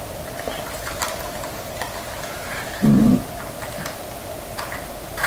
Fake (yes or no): no